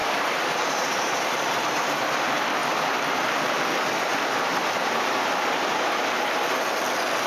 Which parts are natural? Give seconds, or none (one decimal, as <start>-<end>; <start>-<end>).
2.6-7.3